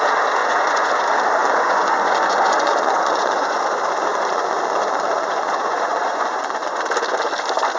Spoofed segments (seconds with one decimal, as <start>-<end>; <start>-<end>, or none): 0.4-1.0; 1.4-3.6; 4.1-6.8